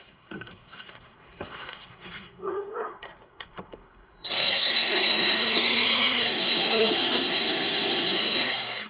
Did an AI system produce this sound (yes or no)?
yes